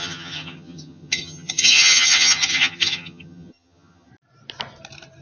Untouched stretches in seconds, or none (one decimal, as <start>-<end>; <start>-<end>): 4.1-5.2